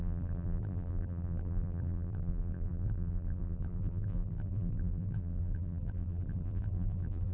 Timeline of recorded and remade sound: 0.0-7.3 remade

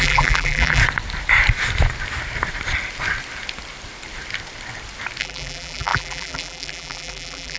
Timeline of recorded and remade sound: 0.0-0.8 remade; 0.8-5.2 recorded; 5.2-7.6 remade

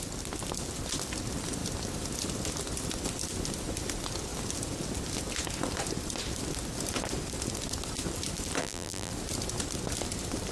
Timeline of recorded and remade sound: 0.0-8.6 recorded; 8.6-9.1 remade; 9.1-10.5 recorded